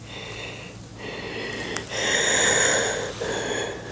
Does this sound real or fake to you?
real